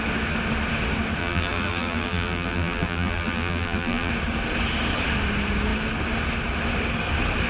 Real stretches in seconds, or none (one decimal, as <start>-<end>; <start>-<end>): 0.0-1.2; 4.1-7.5